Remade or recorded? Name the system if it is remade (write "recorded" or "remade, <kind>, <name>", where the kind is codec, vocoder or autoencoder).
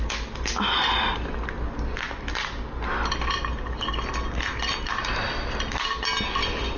recorded